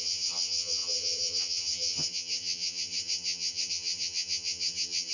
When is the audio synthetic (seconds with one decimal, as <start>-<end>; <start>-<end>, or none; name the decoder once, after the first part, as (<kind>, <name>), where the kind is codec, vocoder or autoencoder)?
0.0-5.1 (vocoder, HiFi-GAN)

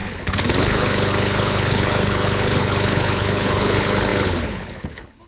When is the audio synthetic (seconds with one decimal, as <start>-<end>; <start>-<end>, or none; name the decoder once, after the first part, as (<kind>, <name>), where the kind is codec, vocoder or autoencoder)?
0.0-5.3 (codec, HILCodec)